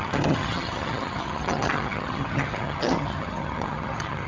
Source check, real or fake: fake